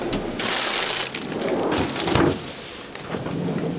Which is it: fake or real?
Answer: real